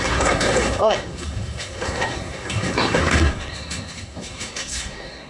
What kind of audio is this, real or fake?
fake